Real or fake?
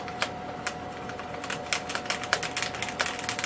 real